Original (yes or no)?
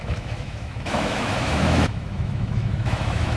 no